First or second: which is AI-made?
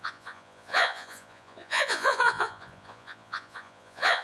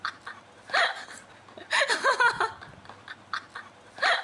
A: first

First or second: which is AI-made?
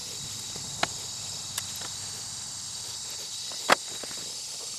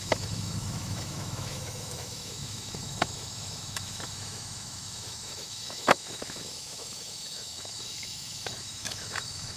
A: second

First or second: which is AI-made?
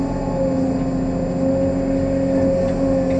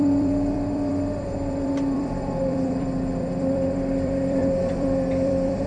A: second